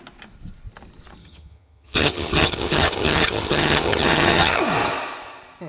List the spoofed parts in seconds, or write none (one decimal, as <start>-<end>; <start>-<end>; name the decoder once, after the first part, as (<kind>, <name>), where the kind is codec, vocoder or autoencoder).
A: 1.2-4.6 (vocoder, HiFi-GAN)